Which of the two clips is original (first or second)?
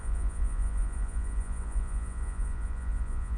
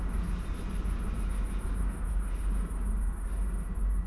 second